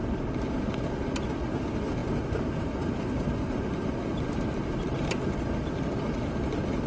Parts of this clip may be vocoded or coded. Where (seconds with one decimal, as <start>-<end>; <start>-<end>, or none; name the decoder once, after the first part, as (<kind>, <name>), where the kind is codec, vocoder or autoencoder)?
none